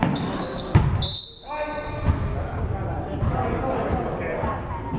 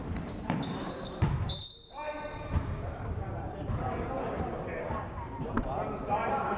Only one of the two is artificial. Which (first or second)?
second